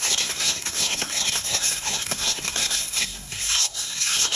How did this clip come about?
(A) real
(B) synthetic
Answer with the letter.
B